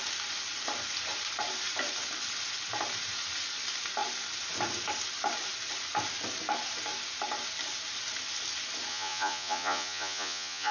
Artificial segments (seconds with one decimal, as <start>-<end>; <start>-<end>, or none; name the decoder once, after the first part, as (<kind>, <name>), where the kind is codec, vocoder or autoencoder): 8.9-10.7 (vocoder, Vocos)